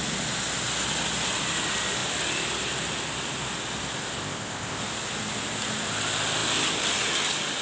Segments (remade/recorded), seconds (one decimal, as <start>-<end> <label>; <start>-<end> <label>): 0.0-4.2 recorded; 4.2-4.8 remade; 4.8-7.6 recorded